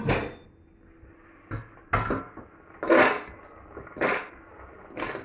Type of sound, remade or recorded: recorded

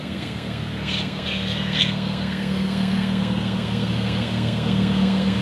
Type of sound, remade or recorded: remade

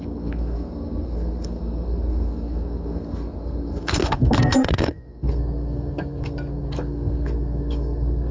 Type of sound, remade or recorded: remade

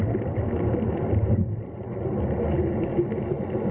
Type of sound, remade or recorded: recorded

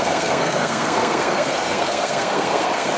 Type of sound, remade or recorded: remade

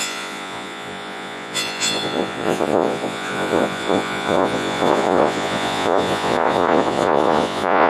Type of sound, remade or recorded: remade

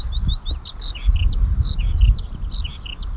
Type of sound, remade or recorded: recorded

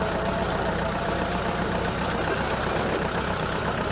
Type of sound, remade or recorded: remade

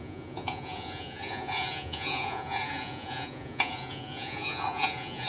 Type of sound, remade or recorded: remade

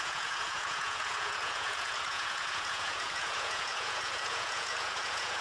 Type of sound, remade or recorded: remade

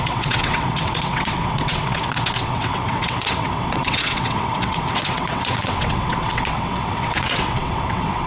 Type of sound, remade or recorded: remade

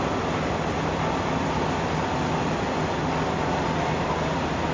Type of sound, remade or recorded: recorded